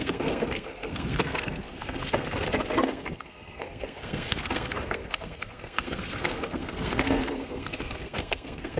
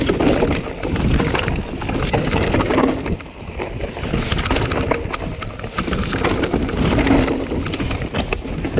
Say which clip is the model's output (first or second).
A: first